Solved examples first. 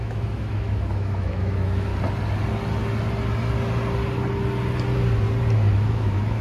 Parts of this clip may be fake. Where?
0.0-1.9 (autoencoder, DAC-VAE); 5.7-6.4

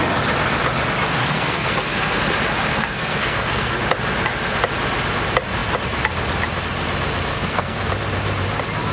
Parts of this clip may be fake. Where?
1.2-2.2 (codec, SNAC); 2.7-3.8; 7.3-7.9

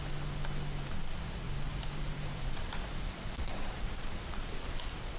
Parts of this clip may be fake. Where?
1.7-4.8 (vocoder, BigVGAN v2)